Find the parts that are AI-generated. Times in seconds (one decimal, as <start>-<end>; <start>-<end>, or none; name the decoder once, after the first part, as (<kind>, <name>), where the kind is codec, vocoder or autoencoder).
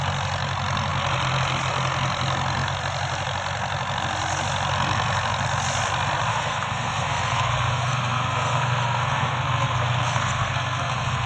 6.3-11.3 (codec, SNAC)